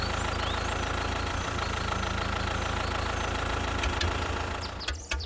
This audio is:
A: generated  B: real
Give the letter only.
B